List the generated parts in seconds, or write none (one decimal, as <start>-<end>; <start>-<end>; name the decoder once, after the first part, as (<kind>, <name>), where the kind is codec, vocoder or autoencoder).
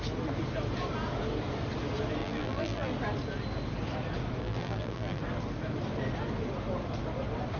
2.2-2.9 (vocoder, BigVGAN v2); 4.4-5.2